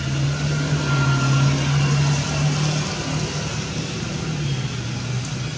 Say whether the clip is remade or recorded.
recorded